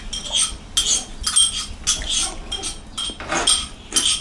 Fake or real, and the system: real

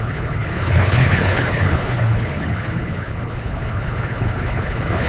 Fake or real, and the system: fake, codec, HILCodec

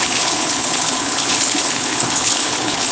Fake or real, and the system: fake, codec, HILCodec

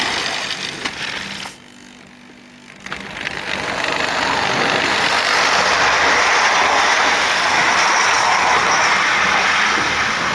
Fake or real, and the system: real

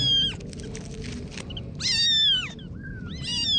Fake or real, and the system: real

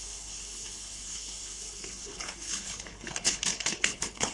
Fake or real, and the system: fake, codec, HILCodec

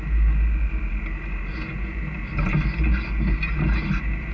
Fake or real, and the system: real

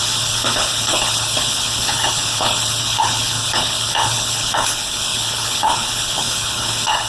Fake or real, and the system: fake, codec, HILCodec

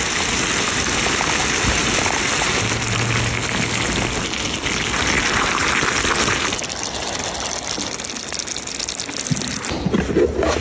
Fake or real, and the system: real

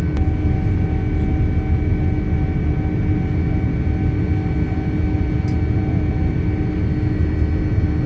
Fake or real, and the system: real